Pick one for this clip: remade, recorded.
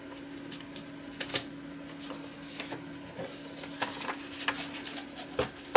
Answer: recorded